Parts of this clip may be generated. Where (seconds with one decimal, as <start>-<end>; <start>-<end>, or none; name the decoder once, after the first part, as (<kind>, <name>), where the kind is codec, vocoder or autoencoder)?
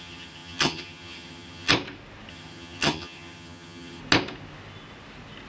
0.0-1.7 (vocoder, HiFi-GAN); 2.3-4.0